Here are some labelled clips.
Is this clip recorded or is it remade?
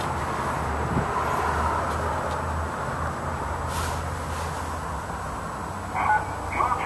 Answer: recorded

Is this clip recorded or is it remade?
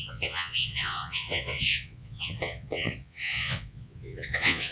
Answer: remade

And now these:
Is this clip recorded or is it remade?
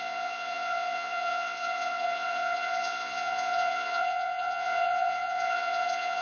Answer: remade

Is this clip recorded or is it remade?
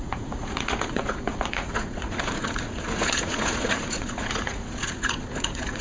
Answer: remade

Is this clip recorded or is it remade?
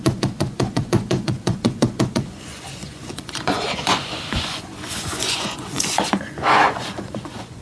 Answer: remade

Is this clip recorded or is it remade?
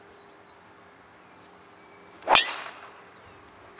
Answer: recorded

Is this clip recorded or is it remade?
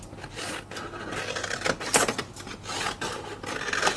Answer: recorded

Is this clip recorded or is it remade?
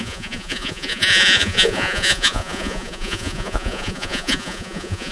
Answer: remade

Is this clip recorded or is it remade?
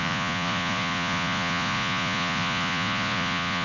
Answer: remade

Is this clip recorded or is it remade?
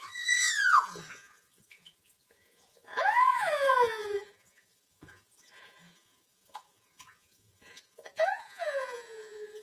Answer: remade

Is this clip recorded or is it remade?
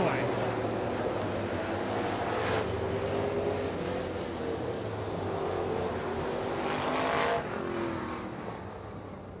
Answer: recorded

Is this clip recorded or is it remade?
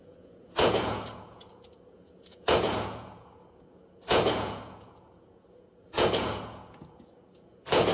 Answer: remade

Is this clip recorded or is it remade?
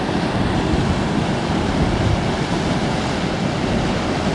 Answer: recorded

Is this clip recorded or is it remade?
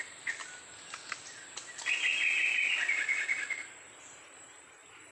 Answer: recorded